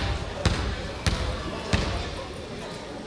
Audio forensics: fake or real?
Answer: real